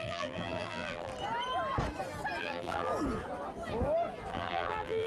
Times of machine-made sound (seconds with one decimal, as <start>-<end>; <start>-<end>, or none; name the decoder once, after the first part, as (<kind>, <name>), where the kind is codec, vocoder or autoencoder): 0.0-1.1 (vocoder, BigVGAN v2); 2.4-2.9; 4.3-5.1